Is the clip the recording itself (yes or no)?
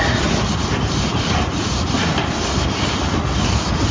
yes